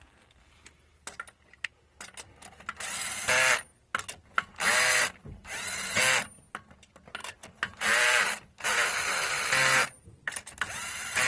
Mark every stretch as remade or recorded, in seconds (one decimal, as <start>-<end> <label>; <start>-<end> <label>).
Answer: 0.0-3.8 recorded; 3.8-6.0 remade; 6.0-7.2 recorded; 7.2-11.3 remade